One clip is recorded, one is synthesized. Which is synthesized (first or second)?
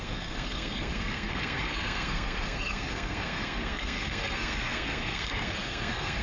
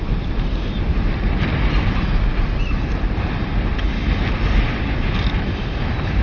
first